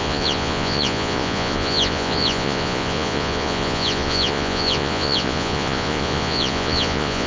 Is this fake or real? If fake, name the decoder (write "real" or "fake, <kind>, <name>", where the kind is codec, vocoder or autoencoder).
fake, vocoder, Vocos